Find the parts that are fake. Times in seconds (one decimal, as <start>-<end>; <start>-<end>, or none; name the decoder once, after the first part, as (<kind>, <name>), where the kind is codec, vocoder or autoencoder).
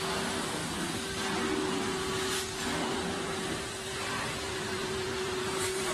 2.8-5.9 (vocoder, BigVGAN v2)